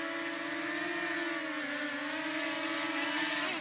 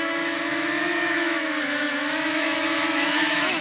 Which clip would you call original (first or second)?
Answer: first